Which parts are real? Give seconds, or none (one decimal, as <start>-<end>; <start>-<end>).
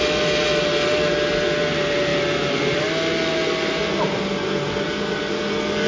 0.0-5.9